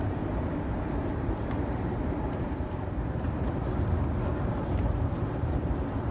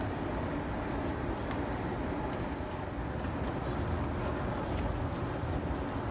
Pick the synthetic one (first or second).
first